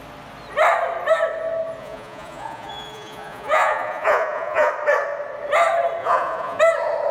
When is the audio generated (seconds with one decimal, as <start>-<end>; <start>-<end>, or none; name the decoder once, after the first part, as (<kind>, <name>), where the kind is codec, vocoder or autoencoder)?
1.8-4.7 (vocoder, Vocos); 6.0-6.6